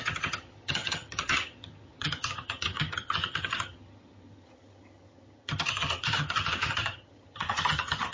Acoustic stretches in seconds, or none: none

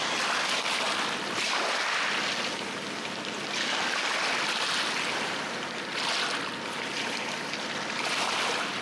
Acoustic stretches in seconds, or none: 0.0-8.8

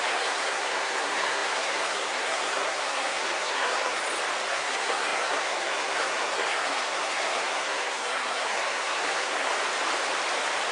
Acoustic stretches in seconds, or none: 4.0-4.5; 9.5-10.7

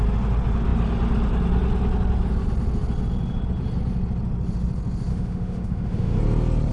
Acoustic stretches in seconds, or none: 0.0-5.1; 6.2-6.7